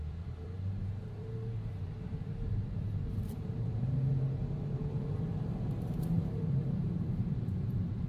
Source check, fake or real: fake